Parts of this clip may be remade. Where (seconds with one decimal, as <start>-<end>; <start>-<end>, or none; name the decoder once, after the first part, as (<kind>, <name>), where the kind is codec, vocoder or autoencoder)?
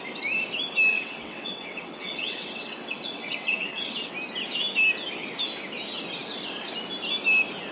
0.9-4.1 (vocoder, WaveNeXt)